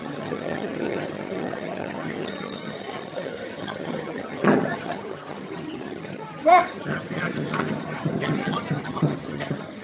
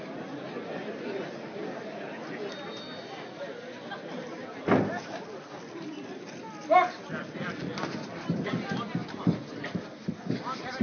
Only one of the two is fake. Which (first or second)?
first